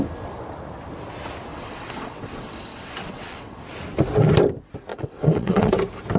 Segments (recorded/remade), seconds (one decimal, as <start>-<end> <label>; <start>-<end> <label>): 0.0-1.5 recorded; 1.5-3.6 remade; 3.6-4.9 recorded; 4.9-5.7 remade; 5.7-6.2 recorded